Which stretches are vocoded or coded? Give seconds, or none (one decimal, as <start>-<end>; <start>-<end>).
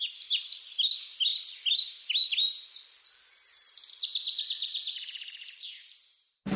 none